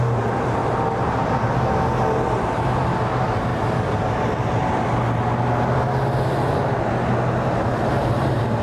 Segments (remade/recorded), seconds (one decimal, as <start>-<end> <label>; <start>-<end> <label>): 0.0-8.6 recorded